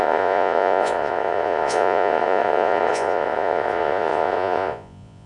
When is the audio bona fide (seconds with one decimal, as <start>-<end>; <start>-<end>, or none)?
none